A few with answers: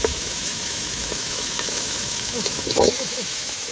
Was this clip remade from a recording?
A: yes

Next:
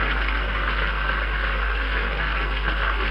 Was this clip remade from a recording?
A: yes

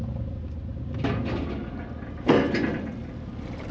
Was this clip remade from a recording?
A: no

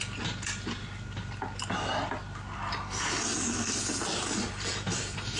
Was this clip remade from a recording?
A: no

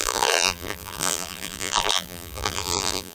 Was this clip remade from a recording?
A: yes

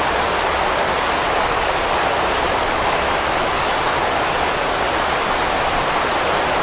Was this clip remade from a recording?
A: no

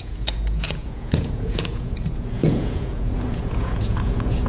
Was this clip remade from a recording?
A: yes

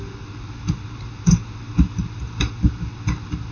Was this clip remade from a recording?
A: no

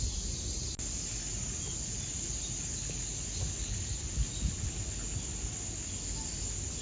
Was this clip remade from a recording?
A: no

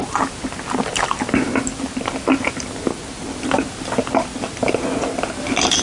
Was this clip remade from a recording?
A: no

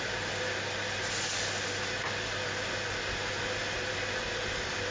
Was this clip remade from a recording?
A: no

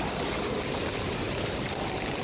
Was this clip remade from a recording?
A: no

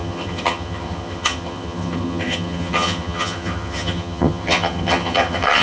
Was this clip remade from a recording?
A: yes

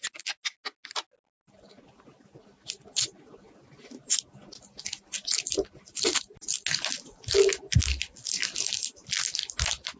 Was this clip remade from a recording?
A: no